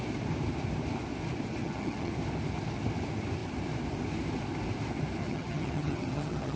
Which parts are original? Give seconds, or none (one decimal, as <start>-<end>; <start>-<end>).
0.0-1.6; 2.1-5.2

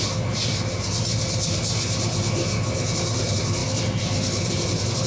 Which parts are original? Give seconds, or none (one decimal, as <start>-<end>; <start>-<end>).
0.0-5.1

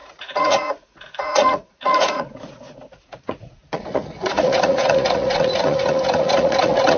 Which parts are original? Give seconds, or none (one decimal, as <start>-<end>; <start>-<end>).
none

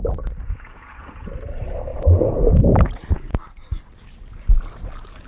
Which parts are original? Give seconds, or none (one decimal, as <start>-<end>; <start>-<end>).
0.0-0.4; 1.1-5.3

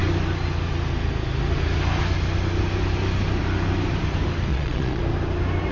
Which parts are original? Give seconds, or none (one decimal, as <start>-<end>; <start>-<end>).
0.0-4.5; 5.0-5.7

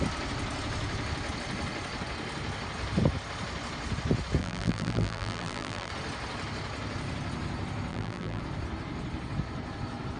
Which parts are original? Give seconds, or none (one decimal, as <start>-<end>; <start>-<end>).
0.0-4.4; 5.9-7.9; 8.4-10.2

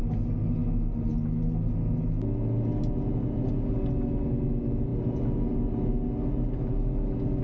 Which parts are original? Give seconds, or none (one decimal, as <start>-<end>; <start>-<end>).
0.0-7.4

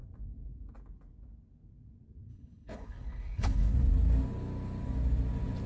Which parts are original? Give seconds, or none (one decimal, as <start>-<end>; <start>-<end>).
0.0-2.3; 3.7-5.7